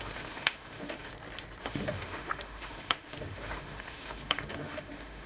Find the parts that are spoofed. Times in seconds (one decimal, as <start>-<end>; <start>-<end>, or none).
0.0-1.1; 1.6-5.3